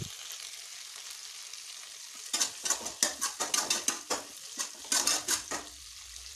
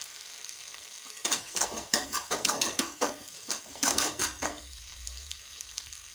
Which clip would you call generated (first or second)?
second